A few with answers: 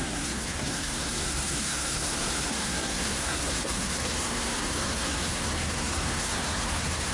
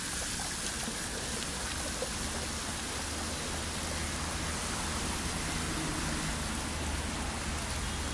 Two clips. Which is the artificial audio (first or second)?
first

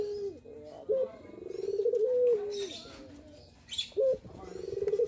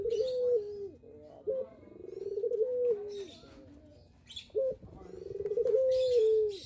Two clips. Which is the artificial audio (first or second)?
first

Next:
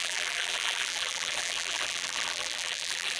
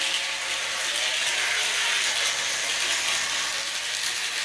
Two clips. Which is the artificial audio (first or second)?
first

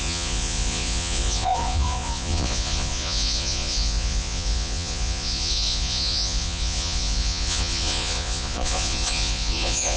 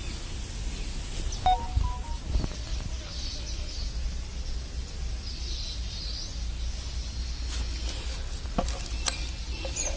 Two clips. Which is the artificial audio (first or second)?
first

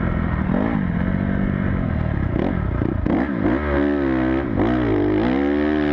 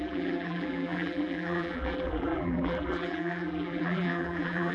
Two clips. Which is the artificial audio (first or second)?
second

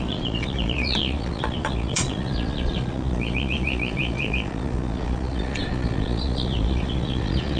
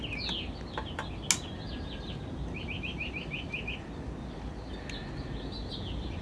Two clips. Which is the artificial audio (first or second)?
first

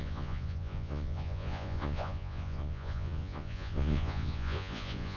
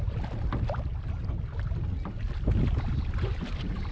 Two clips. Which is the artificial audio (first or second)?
first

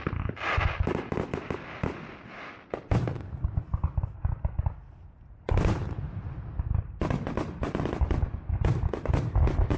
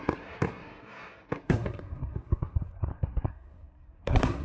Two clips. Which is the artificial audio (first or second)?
second